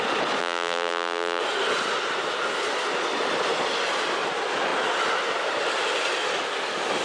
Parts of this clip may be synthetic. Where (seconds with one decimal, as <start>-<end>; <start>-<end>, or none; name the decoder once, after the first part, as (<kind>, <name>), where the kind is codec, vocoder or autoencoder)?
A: 0.4-1.4 (vocoder, BigVGAN v2)